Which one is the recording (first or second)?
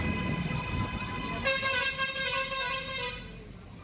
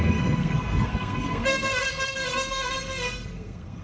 first